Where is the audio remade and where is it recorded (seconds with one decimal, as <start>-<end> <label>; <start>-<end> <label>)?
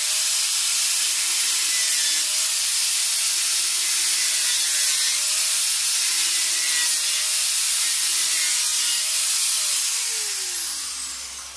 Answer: 0.0-8.7 recorded; 8.7-9.2 remade; 9.2-11.6 recorded